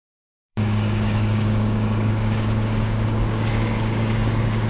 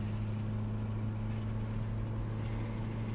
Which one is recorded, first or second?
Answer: second